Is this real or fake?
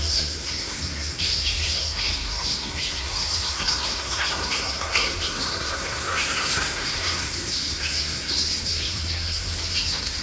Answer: fake